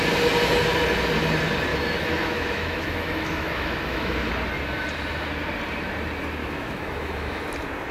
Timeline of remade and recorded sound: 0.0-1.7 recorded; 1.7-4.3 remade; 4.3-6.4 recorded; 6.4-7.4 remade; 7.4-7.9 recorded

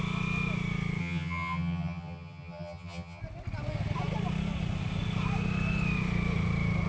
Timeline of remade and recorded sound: 0.0-1.0 recorded; 1.0-3.2 remade; 3.2-6.9 recorded

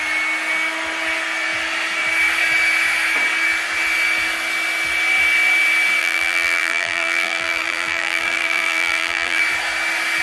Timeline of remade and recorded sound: 0.0-6.0 recorded; 6.0-9.4 remade; 9.4-10.2 recorded

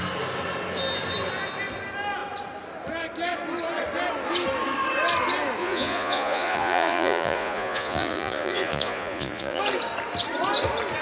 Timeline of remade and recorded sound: 0.0-5.6 recorded; 5.6-9.6 remade; 9.6-11.0 recorded